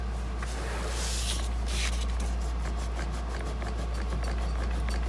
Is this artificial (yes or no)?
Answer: no